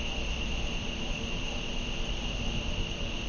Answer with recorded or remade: recorded